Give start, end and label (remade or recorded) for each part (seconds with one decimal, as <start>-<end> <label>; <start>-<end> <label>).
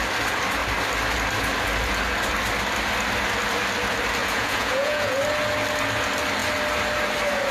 0.0-4.2 recorded; 4.2-5.2 remade; 5.2-7.5 recorded